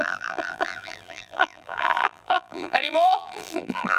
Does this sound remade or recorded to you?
remade